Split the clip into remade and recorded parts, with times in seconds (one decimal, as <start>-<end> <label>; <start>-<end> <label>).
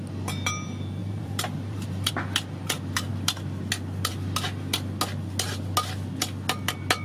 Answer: 0.0-1.0 recorded; 1.0-2.1 remade; 2.1-7.0 recorded